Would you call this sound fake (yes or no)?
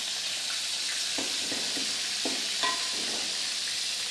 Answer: no